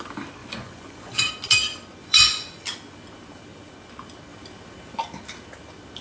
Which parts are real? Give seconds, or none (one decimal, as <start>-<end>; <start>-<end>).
0.0-0.4; 1.3-2.0; 2.6-6.0